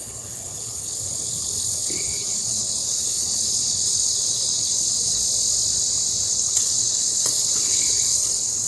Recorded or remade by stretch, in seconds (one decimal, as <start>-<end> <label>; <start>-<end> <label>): 0.0-5.2 remade; 5.2-6.3 recorded; 6.3-8.7 remade